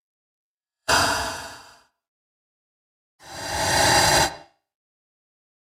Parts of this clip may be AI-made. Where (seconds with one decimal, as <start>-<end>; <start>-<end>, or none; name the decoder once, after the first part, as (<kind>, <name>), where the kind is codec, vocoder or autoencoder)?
0.0-1.6 (vocoder, Vocos)